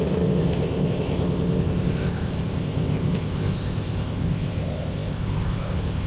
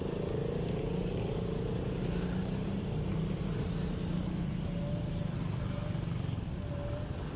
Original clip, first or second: second